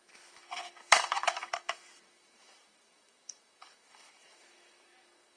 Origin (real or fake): fake